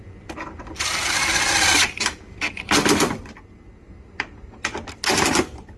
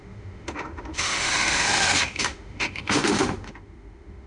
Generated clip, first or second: second